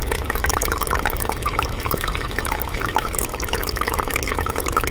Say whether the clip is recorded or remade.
remade